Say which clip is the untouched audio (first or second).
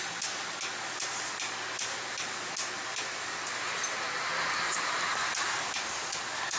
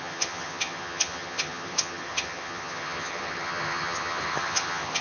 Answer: first